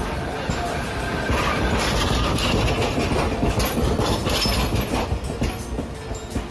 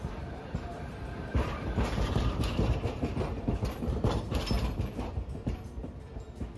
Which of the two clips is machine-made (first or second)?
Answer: second